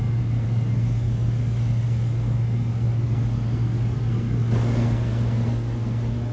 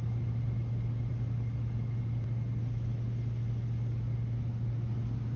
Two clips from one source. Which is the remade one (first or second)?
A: first